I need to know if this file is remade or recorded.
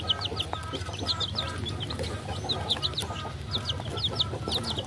recorded